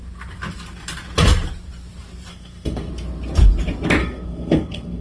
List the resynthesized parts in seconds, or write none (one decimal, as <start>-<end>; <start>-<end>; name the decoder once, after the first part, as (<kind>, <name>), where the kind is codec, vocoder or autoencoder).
2.3-2.9 (codec, SNAC); 4.0-5.0